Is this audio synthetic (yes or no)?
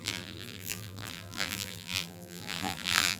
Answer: yes